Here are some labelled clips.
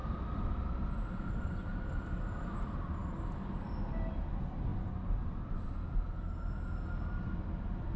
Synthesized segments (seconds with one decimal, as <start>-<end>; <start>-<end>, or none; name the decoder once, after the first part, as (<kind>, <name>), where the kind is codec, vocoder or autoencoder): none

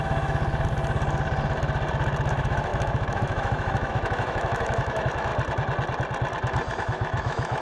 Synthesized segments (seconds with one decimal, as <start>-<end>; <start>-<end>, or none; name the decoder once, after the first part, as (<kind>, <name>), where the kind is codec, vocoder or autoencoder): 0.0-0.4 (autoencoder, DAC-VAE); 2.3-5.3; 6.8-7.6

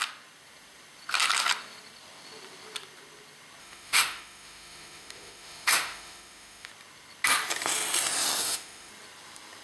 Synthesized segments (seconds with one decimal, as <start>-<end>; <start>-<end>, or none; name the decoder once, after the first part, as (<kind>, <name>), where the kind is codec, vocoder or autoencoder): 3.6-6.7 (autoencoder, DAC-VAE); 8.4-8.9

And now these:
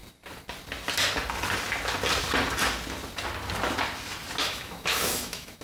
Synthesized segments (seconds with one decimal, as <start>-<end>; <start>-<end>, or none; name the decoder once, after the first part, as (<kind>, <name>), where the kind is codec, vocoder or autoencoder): 4.4-5.6 (autoencoder, DAC-VAE)

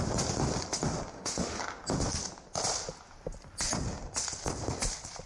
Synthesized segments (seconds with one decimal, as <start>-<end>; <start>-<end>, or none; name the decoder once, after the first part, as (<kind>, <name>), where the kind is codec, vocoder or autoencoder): 1.1-1.6 (autoencoder, DAC-VAE)

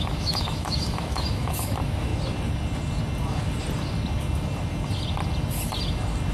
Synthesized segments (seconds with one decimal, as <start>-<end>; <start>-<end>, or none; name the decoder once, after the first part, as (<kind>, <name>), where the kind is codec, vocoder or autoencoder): 0.0-2.1 (autoencoder, DAC-VAE)